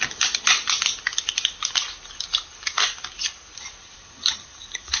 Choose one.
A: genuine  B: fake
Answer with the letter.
A